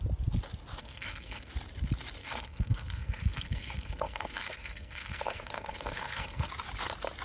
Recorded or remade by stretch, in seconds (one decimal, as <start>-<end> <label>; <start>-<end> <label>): 0.0-0.8 recorded; 0.8-1.5 remade; 1.5-2.2 recorded; 2.2-6.5 remade; 6.5-7.2 recorded